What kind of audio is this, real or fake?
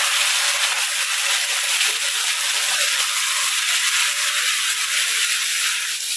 fake